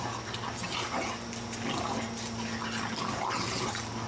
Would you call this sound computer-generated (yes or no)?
no